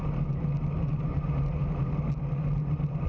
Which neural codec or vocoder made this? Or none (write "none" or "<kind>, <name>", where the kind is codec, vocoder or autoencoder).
none